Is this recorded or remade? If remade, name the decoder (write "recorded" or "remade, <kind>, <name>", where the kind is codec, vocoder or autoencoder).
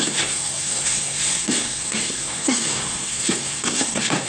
remade, codec, SNAC